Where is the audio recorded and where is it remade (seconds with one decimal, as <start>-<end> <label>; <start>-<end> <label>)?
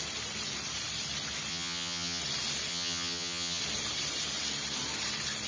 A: 0.0-1.5 recorded; 1.5-2.2 remade; 2.2-2.7 recorded; 2.7-3.6 remade; 3.6-5.5 recorded